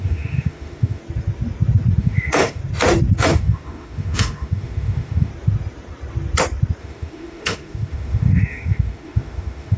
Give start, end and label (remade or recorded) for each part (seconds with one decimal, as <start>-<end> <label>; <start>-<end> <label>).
0.0-1.0 remade; 1.0-2.0 recorded; 2.0-2.6 remade; 2.6-3.2 recorded; 3.2-5.3 remade; 5.3-6.8 recorded; 6.8-9.8 remade